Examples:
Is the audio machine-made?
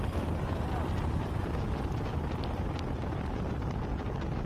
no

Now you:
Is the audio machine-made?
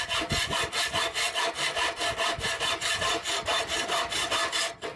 no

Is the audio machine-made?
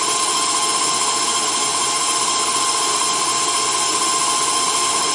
no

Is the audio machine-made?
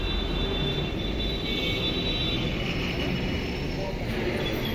no